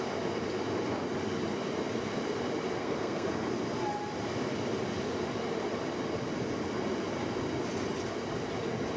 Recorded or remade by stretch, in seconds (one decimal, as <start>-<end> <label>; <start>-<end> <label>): 0.0-2.8 recorded; 2.8-3.5 remade; 3.5-9.0 recorded